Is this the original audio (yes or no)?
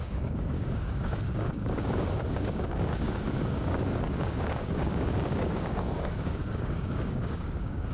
no